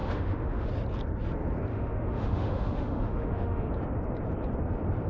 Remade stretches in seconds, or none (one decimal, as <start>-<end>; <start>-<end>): 0.0-0.7; 1.7-3.7